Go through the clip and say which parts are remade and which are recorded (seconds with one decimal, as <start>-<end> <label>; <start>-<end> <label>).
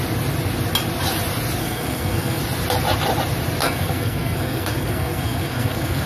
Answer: 0.0-1.6 recorded; 1.6-2.4 remade; 2.4-3.6 recorded; 3.6-6.1 remade